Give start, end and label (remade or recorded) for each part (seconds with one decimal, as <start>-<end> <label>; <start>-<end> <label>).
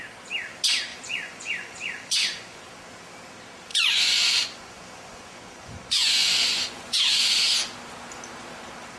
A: 0.0-0.9 recorded; 0.9-2.6 remade; 2.6-3.7 recorded; 3.7-7.4 remade; 7.4-9.0 recorded